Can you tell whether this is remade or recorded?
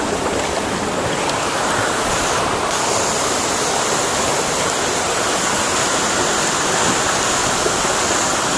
recorded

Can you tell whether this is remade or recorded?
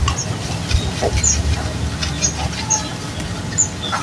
recorded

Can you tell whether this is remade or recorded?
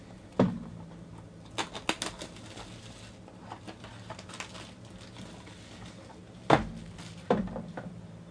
recorded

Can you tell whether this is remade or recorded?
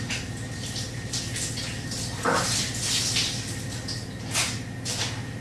recorded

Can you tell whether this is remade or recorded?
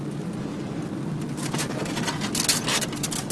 recorded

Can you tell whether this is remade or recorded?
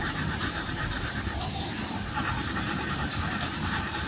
remade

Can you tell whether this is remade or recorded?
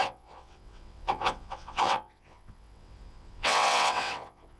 remade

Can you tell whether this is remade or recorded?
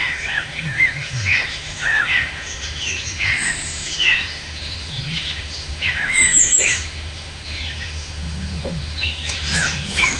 remade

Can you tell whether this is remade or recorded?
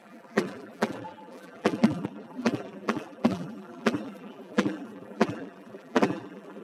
remade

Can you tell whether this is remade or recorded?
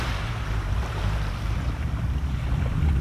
recorded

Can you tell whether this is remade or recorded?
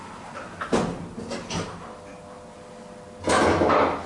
recorded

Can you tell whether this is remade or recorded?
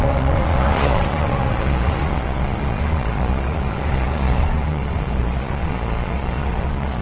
remade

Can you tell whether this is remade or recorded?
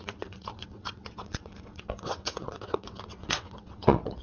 remade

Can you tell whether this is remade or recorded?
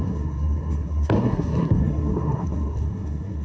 remade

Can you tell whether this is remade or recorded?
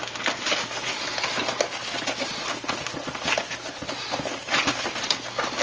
recorded